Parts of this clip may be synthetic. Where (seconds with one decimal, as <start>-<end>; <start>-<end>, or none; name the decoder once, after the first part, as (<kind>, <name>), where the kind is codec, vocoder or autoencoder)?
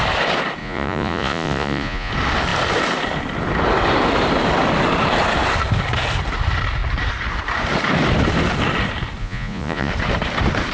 0.6-2.1 (vocoder, Vocos); 9.2-9.9